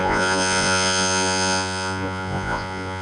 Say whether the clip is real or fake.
fake